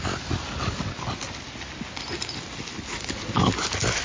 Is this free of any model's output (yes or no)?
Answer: yes